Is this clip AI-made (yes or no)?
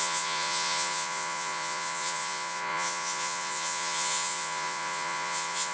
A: yes